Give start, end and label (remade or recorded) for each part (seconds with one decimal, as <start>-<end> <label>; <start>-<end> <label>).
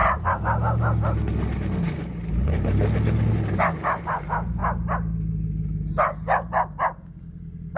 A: 0.0-7.8 recorded